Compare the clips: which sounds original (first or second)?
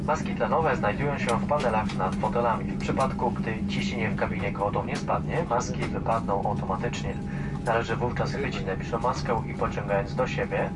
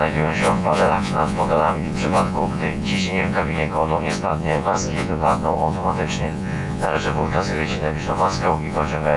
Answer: first